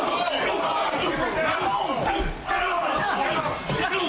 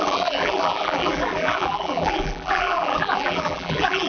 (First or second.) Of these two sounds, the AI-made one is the second